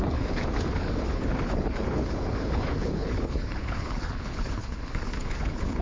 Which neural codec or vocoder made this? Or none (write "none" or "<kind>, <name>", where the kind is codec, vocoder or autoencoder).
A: codec, HILCodec